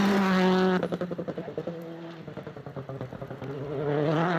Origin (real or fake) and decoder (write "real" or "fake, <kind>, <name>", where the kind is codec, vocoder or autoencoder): real